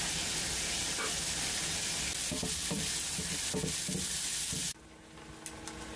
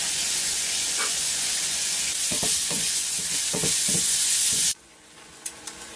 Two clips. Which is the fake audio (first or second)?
second